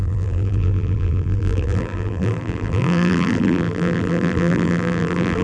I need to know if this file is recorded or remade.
remade